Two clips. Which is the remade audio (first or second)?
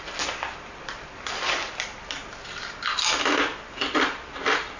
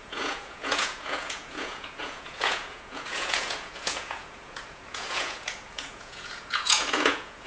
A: second